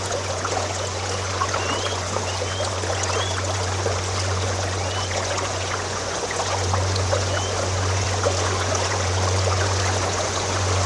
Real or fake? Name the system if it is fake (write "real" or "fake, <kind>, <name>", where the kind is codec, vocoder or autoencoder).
fake, vocoder, Vocos